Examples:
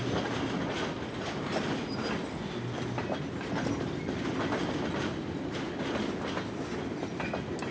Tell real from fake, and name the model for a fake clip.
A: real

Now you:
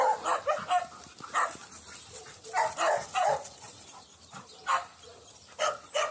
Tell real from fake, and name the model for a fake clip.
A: real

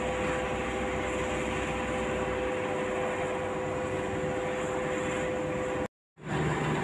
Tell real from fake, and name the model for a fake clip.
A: real